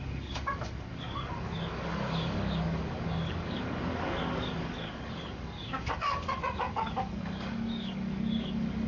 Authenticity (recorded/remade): remade